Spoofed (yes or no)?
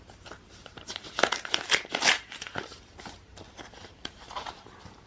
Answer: yes